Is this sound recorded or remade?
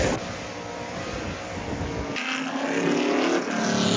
recorded